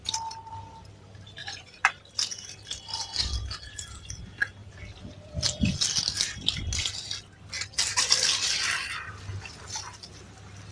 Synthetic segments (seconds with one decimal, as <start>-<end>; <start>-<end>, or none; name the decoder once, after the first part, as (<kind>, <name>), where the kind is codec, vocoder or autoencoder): 1.4-1.9 (vocoder, Vocos)